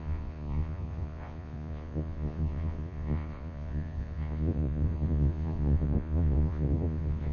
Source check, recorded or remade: remade